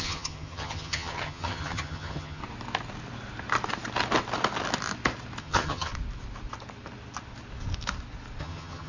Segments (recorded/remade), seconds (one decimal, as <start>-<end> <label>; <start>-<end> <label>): 0.0-2.4 remade; 2.4-5.4 recorded; 5.4-5.9 remade; 5.9-8.4 recorded; 8.4-8.9 remade